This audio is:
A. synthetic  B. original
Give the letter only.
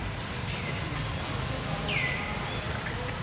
B